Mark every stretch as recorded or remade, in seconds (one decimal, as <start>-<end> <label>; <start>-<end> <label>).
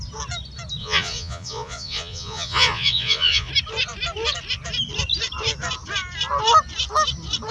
0.0-0.8 recorded; 0.8-3.5 remade; 3.5-7.5 recorded